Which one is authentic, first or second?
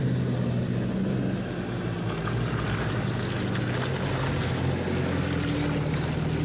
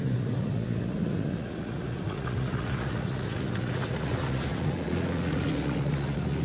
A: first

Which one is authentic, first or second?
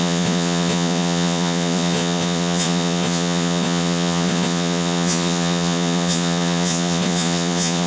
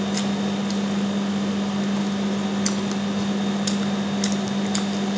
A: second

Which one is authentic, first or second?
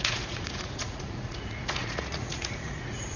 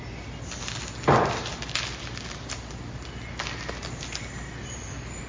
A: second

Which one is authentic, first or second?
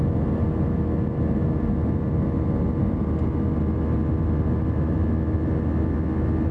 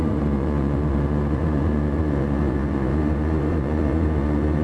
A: first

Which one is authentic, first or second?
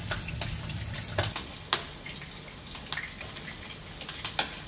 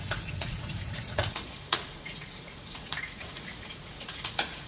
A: first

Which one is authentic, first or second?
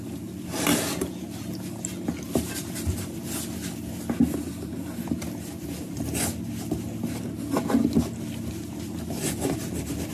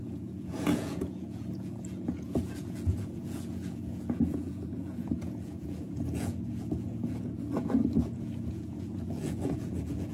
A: first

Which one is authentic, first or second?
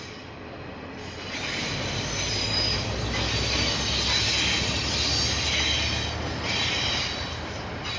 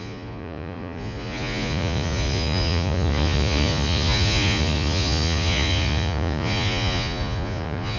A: first